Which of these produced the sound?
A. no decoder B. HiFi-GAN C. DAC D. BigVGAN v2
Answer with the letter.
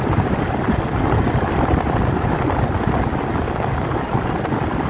A